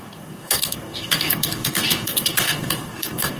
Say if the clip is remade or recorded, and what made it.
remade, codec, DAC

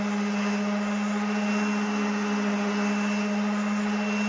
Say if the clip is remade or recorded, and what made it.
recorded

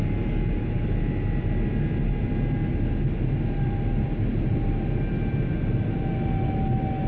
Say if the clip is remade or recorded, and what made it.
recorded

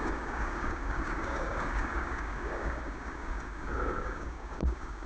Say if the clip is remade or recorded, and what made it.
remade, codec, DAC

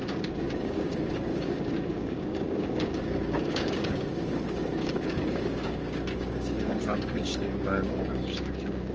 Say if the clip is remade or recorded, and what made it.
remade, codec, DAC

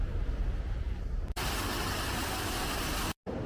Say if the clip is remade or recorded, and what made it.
recorded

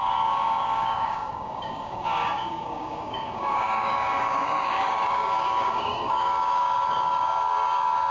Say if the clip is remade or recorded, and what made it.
remade, codec, DAC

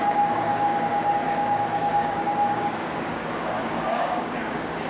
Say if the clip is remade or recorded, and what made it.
remade, codec, DAC